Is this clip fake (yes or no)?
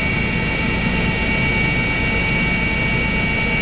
no